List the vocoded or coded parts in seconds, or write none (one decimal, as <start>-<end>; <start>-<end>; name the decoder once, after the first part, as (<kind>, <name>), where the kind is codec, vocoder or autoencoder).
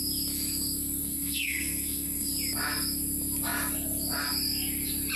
1.0-2.3 (codec, SNAC)